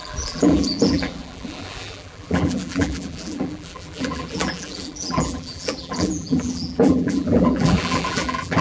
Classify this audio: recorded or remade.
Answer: remade